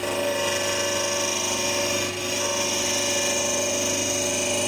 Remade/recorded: recorded